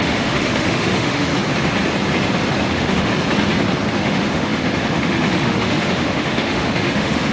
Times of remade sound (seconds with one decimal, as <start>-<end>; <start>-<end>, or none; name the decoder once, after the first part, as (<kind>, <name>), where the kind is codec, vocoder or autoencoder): 0.0-1.3 (autoencoder, DAC-VAE); 2.7-3.1; 3.9-7.3